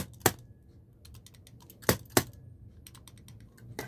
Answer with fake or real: real